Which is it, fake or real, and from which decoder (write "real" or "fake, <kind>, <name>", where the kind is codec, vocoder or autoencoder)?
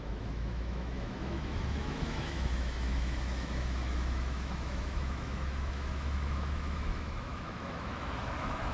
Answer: fake, autoencoder, DAC-VAE